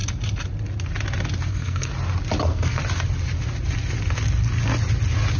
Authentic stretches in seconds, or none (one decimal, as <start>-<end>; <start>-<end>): 0.0-1.5; 1.9-2.4; 2.8-5.4